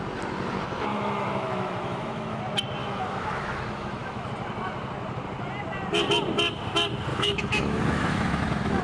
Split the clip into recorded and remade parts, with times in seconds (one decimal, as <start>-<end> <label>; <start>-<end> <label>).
0.0-0.9 recorded; 0.9-2.4 remade; 2.4-2.8 recorded; 2.8-4.3 remade; 4.3-7.1 recorded; 7.1-8.8 remade